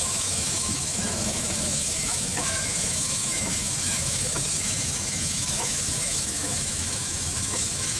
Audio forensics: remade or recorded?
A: remade